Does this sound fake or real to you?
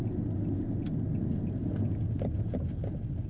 real